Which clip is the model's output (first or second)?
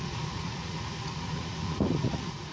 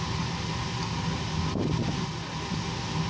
first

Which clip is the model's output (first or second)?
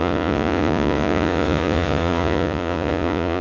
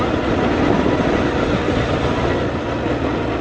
first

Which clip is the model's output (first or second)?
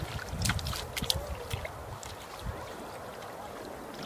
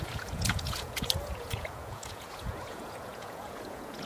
second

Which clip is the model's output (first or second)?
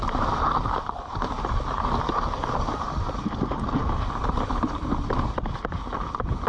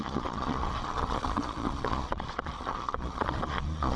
second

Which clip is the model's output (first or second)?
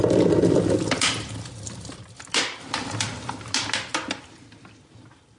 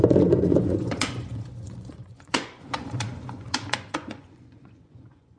second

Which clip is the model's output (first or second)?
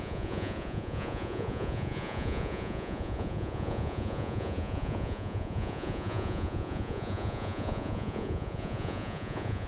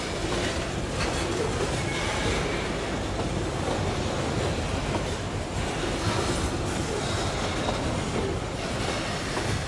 first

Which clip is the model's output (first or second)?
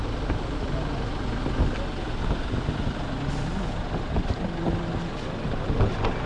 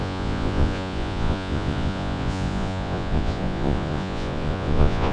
second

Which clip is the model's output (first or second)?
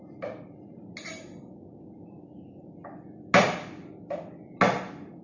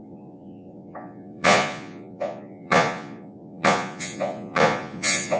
second